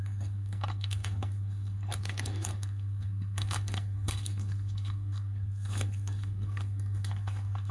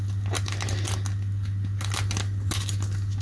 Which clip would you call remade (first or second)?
first